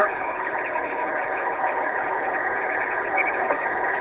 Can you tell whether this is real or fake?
fake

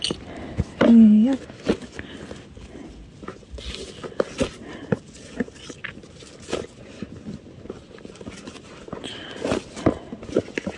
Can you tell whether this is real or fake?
real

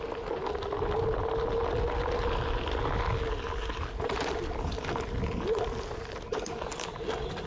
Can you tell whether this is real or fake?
real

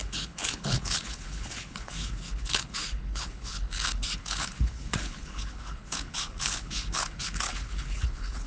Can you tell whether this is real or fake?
fake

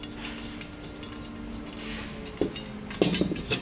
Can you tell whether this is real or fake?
real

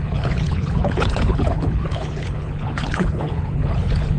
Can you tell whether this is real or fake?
fake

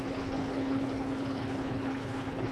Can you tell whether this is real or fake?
fake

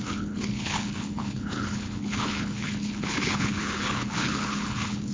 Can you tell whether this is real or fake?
fake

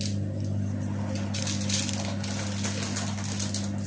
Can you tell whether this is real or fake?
real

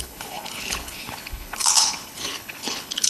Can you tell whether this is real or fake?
fake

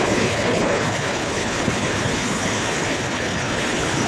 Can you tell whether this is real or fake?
fake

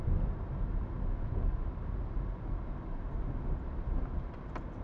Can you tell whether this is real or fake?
real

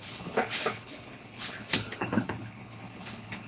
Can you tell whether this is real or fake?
fake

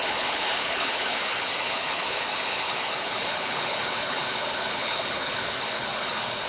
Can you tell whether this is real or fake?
fake